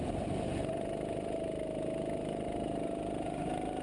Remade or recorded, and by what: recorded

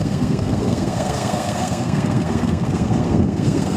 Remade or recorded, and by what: remade, codec, SNAC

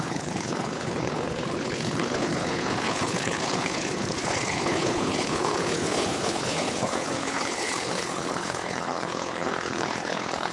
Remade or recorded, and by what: remade, codec, HILCodec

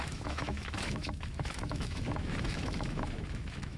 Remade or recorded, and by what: remade, autoencoder, DAC-VAE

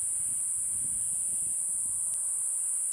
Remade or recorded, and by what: remade, vocoder, BigVGAN v2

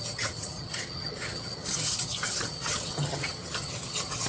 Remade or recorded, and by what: remade, vocoder, HiFi-GAN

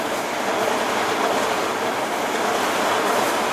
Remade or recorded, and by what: recorded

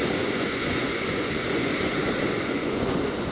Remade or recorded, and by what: remade, vocoder, Vocos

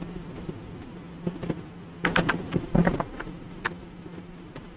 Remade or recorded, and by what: recorded